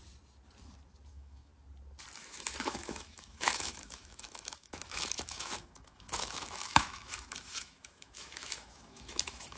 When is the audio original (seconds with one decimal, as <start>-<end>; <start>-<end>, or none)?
0.0-1.1; 1.5-2.2